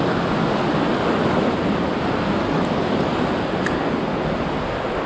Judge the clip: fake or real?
real